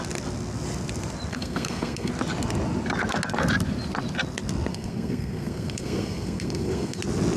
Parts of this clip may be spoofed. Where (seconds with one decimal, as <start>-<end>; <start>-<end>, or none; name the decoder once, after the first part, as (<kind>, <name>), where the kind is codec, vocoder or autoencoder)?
1.3-2.1 (codec, SNAC); 4.7-7.0